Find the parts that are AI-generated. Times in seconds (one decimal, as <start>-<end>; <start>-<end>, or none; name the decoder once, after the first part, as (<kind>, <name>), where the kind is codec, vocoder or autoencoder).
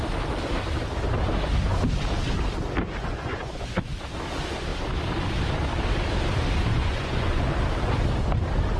3.0-3.8 (vocoder, Vocos); 6.7-7.4